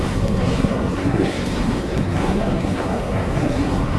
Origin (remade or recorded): remade